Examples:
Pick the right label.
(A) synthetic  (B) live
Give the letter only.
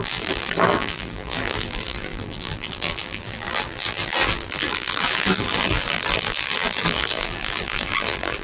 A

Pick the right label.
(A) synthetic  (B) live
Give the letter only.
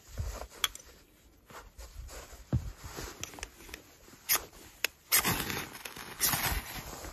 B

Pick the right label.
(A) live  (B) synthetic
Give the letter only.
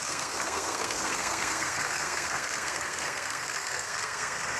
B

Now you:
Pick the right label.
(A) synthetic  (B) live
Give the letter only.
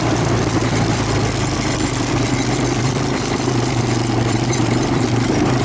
A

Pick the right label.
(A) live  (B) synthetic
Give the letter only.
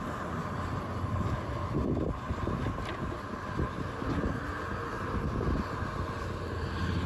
A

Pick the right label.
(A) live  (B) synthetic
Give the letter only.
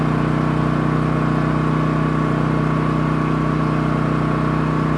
A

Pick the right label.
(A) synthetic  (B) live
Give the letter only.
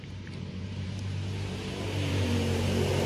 A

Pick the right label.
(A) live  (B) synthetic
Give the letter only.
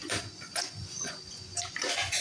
B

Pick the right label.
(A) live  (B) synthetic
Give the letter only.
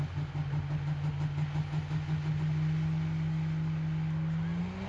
A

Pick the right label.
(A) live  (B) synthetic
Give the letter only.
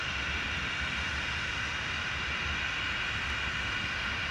A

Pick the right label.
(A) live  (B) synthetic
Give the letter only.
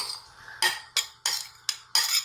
A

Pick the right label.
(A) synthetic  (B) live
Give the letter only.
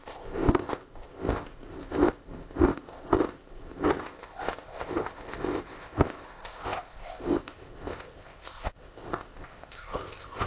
A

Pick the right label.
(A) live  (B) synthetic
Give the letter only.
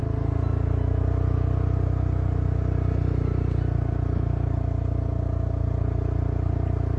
A